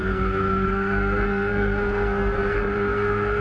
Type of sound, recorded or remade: remade